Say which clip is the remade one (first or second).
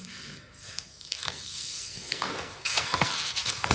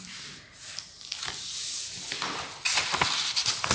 first